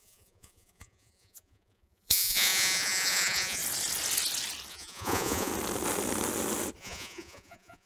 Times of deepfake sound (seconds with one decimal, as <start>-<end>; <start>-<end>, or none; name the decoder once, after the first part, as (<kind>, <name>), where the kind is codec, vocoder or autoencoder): 0.0-3.6 (vocoder, Vocos); 4.7-5.5; 6.8-7.9